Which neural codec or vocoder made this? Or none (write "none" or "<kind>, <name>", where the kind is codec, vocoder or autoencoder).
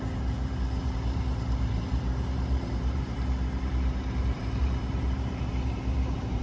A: vocoder, BigVGAN v2